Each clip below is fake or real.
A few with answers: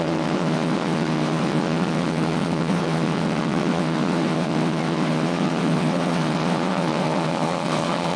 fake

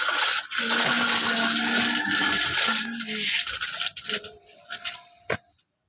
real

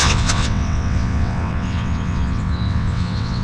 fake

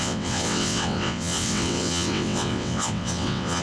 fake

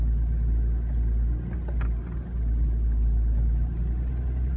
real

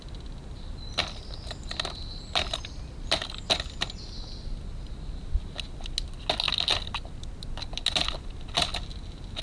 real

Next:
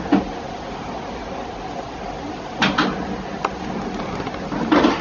real